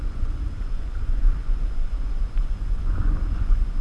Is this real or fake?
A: fake